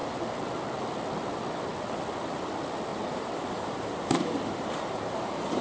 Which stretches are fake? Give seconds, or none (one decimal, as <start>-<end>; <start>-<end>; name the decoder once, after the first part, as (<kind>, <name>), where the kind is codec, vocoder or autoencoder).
2.9-5.6 (vocoder, BigVGAN v2)